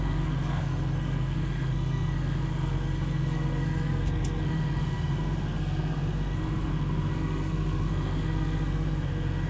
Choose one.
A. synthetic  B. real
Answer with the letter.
A